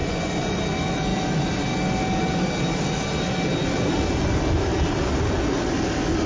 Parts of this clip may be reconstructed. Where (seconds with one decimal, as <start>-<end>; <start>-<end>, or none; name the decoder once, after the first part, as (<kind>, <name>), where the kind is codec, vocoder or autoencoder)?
0.0-0.6 (vocoder, Vocos)